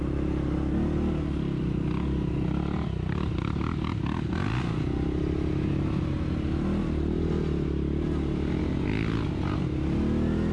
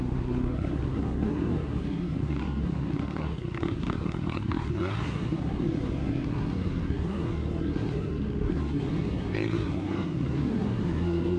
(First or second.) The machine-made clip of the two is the second